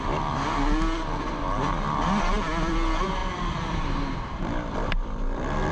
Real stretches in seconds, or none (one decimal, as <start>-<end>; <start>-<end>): 0.0-3.2